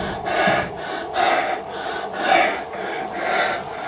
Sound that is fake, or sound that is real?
real